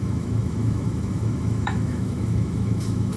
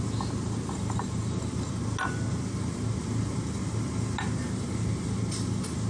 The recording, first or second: second